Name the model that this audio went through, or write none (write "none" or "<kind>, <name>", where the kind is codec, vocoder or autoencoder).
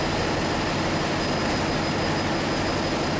none